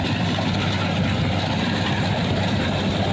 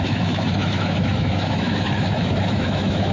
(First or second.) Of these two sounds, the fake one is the second